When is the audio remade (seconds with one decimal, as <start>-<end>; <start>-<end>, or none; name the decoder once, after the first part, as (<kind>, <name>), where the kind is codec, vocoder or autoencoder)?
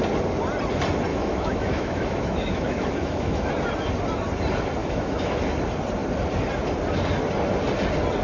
1.1-3.5 (autoencoder, DAC-VAE); 4.8-5.5